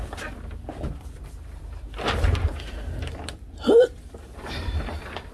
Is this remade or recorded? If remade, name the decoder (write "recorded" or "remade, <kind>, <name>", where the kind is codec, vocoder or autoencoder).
recorded